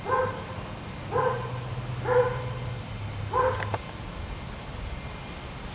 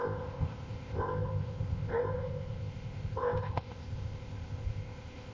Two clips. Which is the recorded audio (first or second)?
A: first